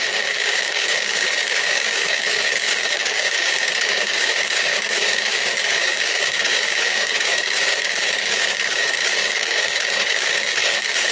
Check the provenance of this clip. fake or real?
fake